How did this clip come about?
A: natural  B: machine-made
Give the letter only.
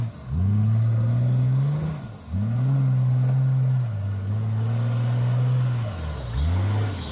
A